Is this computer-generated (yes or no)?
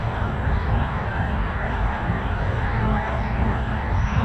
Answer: yes